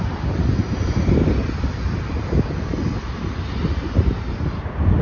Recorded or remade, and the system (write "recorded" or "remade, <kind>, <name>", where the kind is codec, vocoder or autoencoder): recorded